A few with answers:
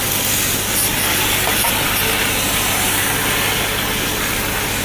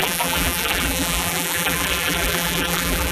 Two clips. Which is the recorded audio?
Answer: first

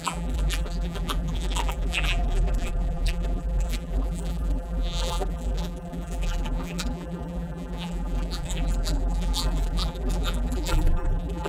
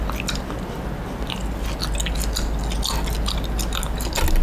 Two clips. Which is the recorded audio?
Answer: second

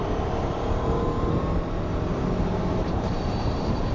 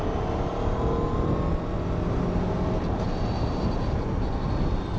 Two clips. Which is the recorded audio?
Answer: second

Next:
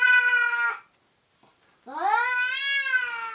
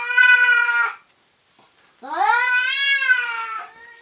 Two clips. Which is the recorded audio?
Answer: first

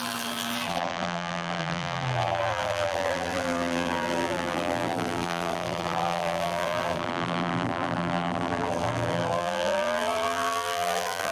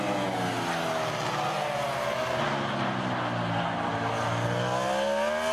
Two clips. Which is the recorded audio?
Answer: second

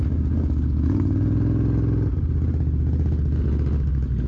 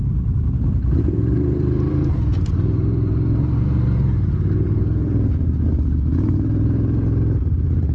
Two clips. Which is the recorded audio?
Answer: first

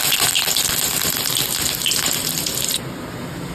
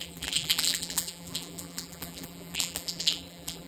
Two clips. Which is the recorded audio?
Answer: first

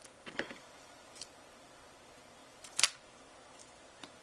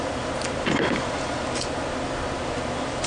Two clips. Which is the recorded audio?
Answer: second